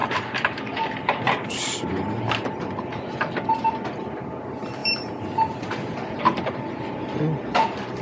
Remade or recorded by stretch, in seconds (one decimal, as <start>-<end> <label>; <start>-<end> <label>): 0.0-1.2 remade; 1.2-4.8 recorded; 4.8-6.2 remade; 6.2-8.0 recorded